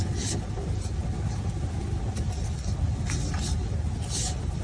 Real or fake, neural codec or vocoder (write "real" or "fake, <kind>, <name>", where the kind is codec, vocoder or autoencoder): real